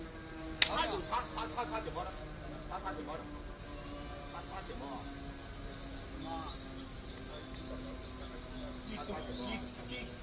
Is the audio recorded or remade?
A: recorded